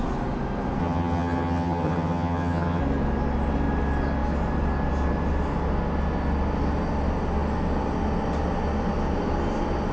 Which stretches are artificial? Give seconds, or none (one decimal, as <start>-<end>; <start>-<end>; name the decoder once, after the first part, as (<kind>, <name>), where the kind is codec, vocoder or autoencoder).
0.8-2.8 (vocoder, HiFi-GAN)